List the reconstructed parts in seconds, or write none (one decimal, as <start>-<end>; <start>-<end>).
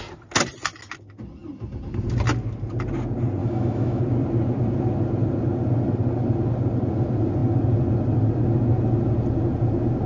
3.4-4.0